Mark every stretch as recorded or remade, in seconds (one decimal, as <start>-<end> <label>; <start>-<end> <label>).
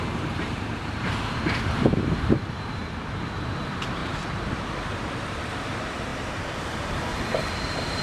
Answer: 0.0-8.0 remade